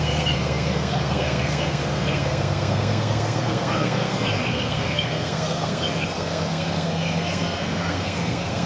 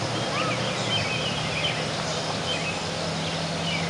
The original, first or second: second